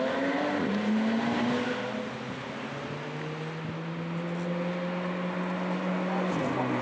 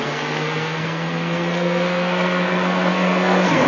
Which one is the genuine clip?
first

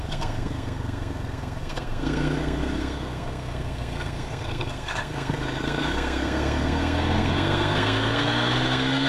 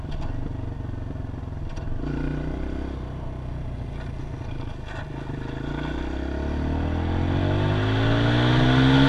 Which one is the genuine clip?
second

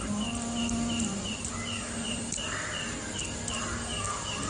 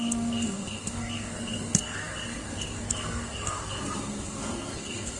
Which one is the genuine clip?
first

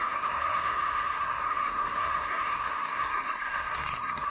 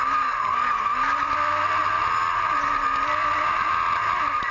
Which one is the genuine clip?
second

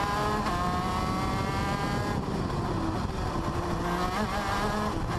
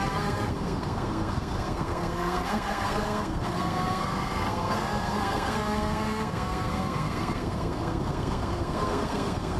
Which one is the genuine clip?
first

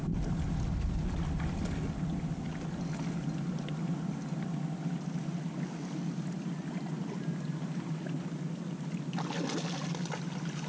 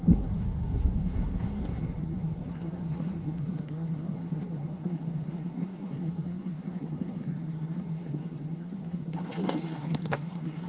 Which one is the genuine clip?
first